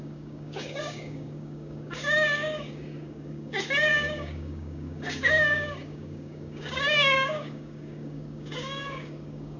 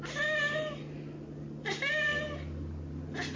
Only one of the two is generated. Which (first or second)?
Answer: first